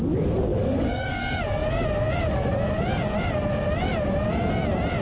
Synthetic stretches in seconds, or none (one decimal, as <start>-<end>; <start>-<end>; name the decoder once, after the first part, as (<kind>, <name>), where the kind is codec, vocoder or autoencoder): 0.5-1.2 (codec, DAC)